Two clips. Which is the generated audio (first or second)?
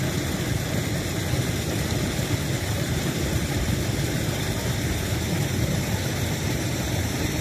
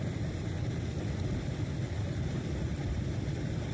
first